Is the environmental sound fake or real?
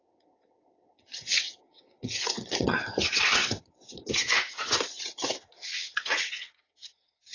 fake